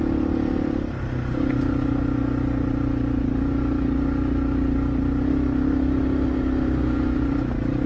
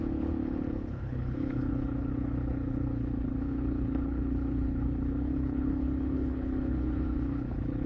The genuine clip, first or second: first